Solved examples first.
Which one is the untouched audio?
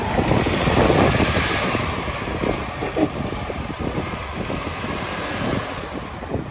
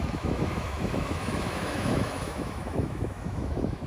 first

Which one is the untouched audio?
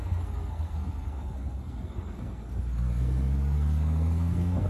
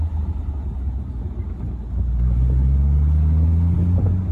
second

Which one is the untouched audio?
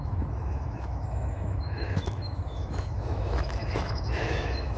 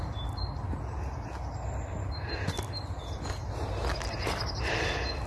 second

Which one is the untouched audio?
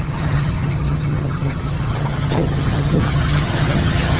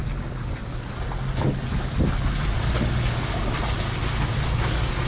second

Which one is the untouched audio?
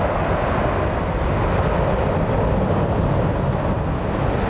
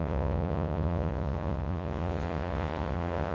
first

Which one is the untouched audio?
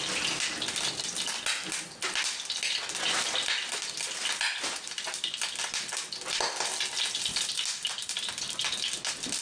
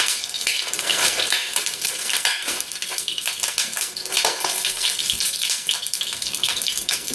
first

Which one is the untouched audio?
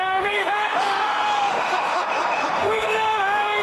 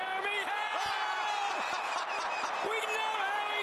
second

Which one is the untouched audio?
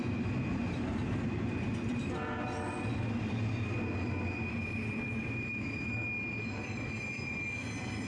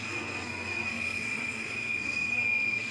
first